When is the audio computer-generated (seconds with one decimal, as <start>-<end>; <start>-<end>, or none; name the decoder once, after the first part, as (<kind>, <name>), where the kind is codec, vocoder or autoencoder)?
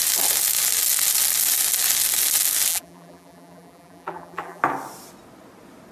2.7-4.6 (vocoder, BigVGAN v2)